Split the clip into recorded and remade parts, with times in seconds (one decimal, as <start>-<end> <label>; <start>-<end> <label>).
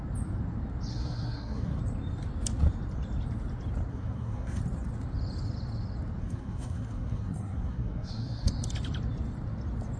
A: 0.0-0.9 recorded; 0.9-1.8 remade; 1.8-3.9 recorded; 3.9-4.6 remade; 4.6-6.2 recorded; 6.2-8.5 remade; 8.5-10.0 recorded